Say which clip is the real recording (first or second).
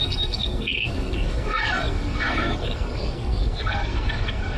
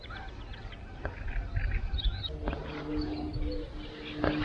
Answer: second